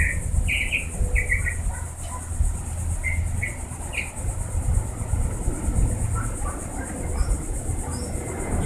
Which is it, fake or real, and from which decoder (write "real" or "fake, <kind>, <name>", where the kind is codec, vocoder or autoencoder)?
real